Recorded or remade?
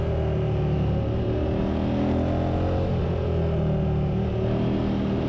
recorded